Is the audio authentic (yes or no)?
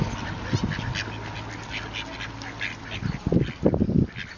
yes